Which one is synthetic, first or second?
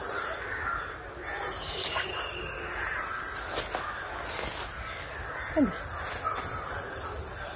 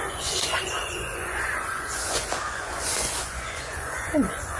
second